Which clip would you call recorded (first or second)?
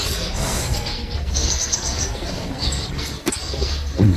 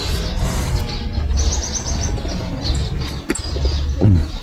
second